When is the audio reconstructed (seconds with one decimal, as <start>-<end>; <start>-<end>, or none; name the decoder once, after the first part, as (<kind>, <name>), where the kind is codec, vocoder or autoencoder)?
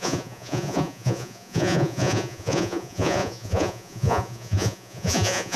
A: 0.0-5.6 (vocoder, Vocos)